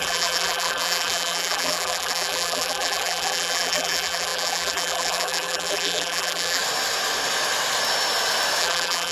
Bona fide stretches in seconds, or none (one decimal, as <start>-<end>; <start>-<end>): 6.6-8.6